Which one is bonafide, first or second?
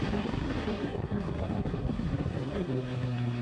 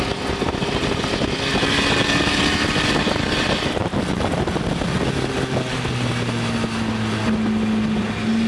second